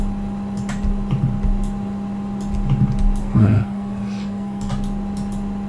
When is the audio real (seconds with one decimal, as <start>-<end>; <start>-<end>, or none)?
0.0-3.2; 4.7-5.7